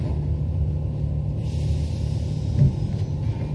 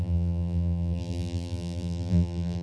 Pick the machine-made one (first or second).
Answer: second